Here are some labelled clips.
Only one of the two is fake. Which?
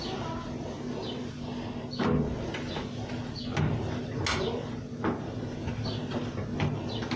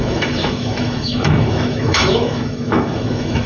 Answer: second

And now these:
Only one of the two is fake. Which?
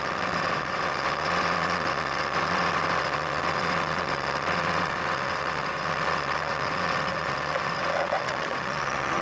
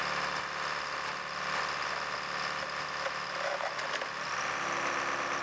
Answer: first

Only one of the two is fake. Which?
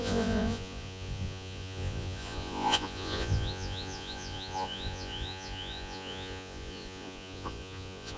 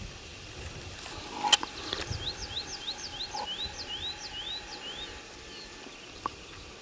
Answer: first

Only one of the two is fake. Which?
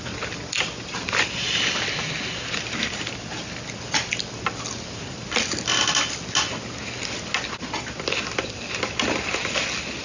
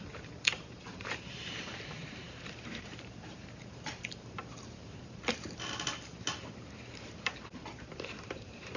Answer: second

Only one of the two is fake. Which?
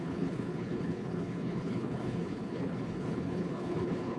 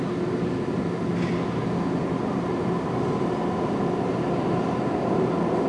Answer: first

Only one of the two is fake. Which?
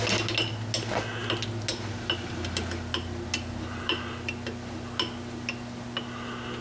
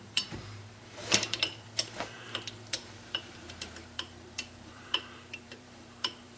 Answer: second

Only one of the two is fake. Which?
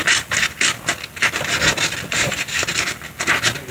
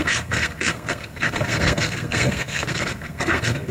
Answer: second